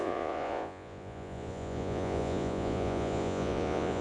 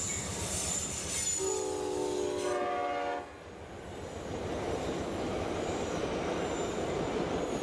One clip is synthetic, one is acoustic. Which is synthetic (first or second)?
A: first